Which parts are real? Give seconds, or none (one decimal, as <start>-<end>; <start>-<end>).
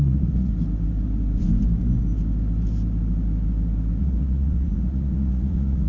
0.5-4.0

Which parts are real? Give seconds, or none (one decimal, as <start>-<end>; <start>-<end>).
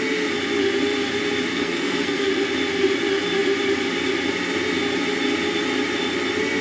0.0-1.5; 2.3-6.6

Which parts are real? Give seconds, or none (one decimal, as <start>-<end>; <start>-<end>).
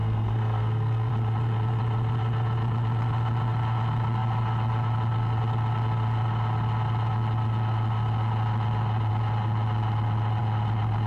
1.1-11.1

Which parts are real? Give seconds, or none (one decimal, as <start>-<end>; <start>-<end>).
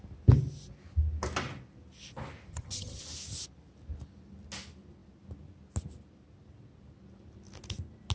0.0-2.5; 3.0-8.1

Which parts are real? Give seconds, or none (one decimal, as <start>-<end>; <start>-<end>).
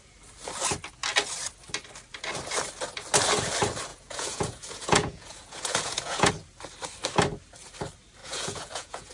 0.0-3.9; 6.3-8.2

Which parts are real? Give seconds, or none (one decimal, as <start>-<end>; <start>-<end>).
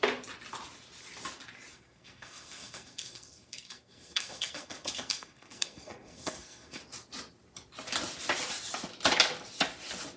0.0-1.7; 6.8-10.2